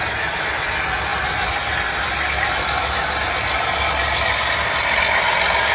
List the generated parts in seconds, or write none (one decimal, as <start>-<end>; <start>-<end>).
none